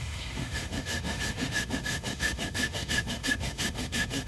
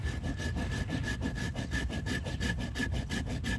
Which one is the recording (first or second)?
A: second